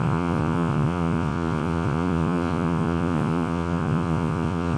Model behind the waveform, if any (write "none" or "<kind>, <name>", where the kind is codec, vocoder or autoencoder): vocoder, Vocos